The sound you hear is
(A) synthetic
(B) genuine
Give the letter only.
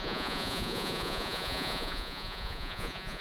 A